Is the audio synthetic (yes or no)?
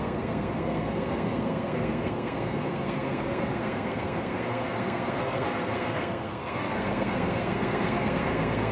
yes